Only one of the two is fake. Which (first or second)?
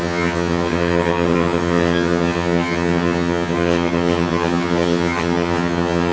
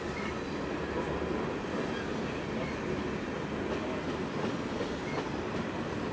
first